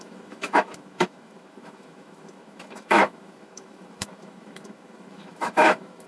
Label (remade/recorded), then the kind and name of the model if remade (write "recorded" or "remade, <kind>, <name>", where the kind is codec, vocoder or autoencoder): remade, autoencoder, DAC-VAE